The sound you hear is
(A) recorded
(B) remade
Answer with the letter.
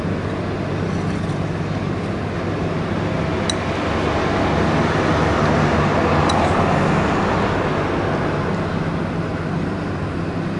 A